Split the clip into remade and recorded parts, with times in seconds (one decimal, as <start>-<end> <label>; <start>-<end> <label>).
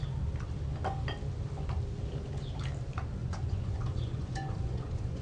0.0-3.2 recorded; 3.2-5.2 remade